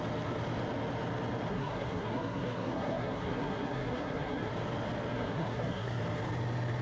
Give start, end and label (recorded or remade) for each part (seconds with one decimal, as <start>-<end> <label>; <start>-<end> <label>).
0.0-1.5 recorded; 1.5-4.5 remade; 4.5-5.1 recorded; 5.1-6.0 remade; 6.0-6.8 recorded